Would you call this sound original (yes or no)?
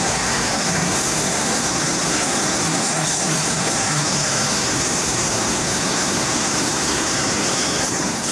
no